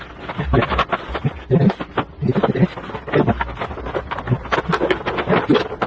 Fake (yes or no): no